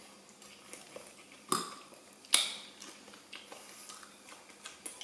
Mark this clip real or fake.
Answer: real